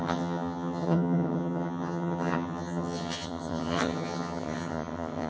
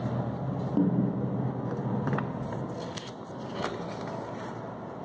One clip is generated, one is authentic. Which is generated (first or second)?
first